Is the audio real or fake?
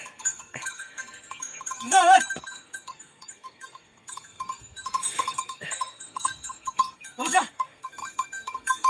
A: fake